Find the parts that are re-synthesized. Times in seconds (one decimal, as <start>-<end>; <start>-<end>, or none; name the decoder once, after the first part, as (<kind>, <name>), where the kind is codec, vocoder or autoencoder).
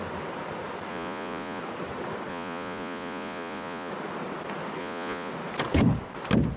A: 0.9-1.6 (vocoder, Vocos); 2.3-3.9; 4.8-5.3